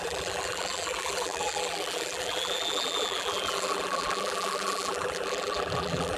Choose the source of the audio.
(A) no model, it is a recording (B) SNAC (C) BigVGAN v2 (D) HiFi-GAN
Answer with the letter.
C